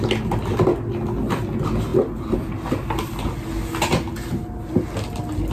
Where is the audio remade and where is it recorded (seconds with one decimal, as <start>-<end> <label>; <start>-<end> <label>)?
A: 0.0-5.5 recorded